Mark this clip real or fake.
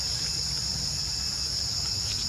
real